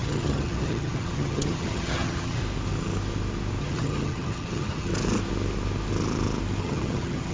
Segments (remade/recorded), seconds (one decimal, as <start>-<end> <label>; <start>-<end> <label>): 0.0-2.4 remade; 2.4-3.6 recorded; 3.6-4.9 remade; 4.9-6.6 recorded; 6.6-7.3 remade

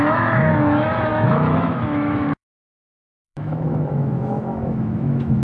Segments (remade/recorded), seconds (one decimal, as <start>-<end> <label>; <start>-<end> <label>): 0.0-5.4 remade

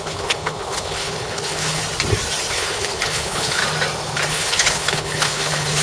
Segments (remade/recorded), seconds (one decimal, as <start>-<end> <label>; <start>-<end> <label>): 0.0-1.8 remade; 1.8-2.5 recorded; 2.5-3.6 remade; 3.6-4.3 recorded; 4.3-5.8 remade

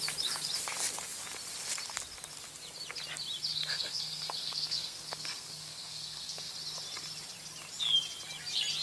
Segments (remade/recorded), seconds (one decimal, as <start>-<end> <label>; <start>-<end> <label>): 0.0-3.5 recorded; 3.5-6.5 remade; 6.5-8.8 recorded

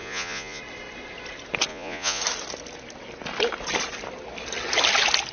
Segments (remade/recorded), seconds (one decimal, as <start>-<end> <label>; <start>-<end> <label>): 0.0-0.6 remade; 0.6-1.7 recorded; 1.7-2.2 remade; 2.2-5.3 recorded

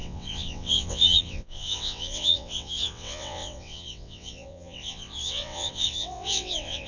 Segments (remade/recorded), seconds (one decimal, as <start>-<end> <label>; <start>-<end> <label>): 0.0-6.9 remade

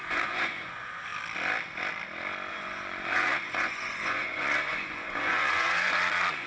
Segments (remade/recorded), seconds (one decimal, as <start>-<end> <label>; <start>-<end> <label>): 0.0-1.1 remade; 1.1-2.5 recorded; 2.5-6.5 remade